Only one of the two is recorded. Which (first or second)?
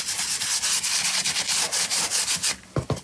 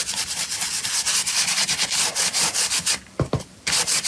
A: first